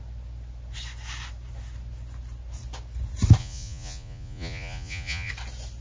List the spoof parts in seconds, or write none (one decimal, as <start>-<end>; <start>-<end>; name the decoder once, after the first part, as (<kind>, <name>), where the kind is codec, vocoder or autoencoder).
3.4-5.3 (vocoder, Vocos)

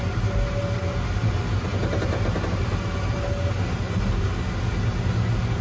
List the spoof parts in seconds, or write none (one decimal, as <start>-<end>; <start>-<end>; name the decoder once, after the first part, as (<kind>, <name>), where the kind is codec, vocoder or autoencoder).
none